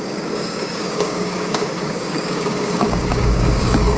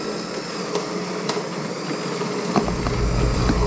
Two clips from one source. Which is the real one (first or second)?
second